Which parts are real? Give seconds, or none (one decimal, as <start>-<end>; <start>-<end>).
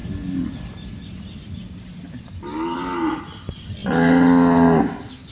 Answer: 0.0-5.3